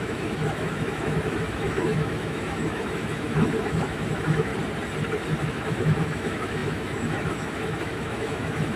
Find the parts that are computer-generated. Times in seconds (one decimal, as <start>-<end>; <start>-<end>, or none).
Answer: 0.0-4.5; 5.4-8.8